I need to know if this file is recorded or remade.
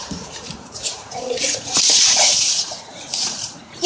remade